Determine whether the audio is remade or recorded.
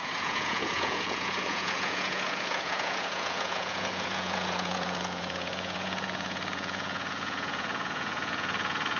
remade